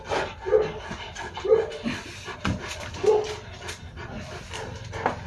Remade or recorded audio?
recorded